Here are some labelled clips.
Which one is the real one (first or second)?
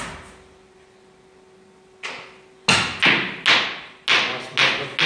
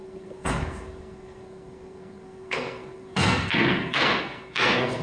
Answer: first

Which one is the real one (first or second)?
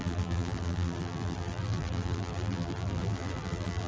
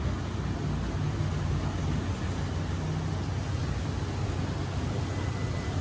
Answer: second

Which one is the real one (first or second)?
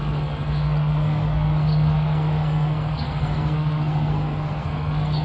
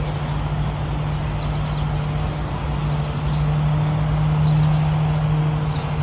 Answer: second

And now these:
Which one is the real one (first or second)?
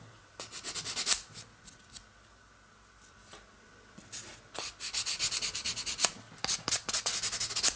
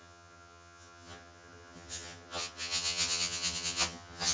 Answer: first